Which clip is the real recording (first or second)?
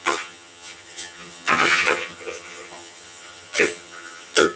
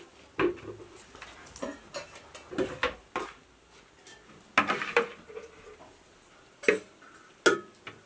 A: second